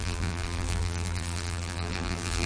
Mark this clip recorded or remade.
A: remade